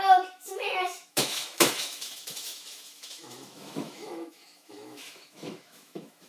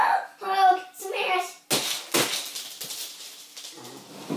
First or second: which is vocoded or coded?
first